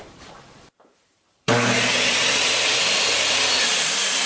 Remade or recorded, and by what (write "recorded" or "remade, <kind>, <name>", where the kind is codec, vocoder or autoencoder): remade, vocoder, BigVGAN v2